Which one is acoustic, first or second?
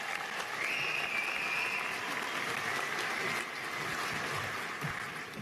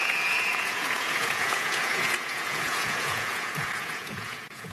first